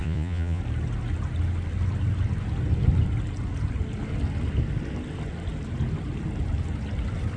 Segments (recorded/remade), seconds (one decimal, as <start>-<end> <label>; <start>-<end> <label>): 0.0-0.6 remade; 0.6-7.4 recorded